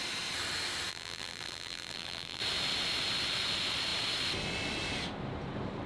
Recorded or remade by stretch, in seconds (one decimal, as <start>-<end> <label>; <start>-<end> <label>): 0.0-0.9 recorded; 0.9-2.4 remade; 2.4-5.9 recorded